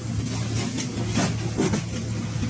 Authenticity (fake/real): real